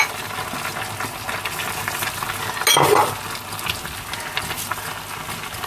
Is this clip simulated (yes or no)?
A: no